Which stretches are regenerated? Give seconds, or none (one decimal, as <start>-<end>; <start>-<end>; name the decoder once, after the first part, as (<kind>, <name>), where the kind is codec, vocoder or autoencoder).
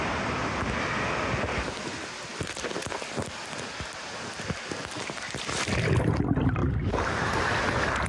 none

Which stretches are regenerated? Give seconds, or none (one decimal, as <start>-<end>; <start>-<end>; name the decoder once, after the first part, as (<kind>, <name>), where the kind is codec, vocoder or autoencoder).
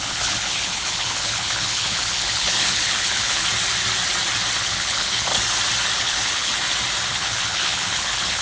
0.0-3.4 (codec, HILCodec); 4.6-5.3; 6.0-6.5; 7.1-8.4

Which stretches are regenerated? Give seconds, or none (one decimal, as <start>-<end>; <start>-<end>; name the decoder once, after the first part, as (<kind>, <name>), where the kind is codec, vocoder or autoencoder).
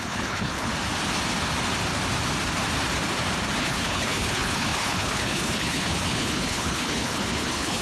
0.0-0.7 (codec, HILCodec); 3.6-7.8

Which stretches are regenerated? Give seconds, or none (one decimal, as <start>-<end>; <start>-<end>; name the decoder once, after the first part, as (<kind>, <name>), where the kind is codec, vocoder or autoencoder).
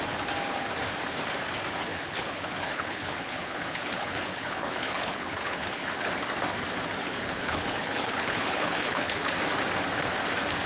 1.9-6.1 (codec, HILCodec); 7.0-9.2